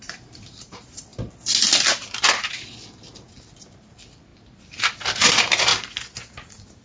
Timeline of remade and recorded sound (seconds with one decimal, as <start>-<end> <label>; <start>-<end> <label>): 0.0-1.1 remade; 1.1-3.7 recorded; 3.7-4.3 remade; 4.3-5.2 recorded; 5.2-5.7 remade; 5.7-6.2 recorded; 6.2-6.8 remade